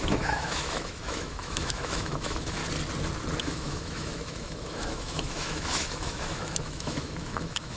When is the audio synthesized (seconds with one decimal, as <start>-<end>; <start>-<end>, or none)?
0.0-2.6; 3.4-7.8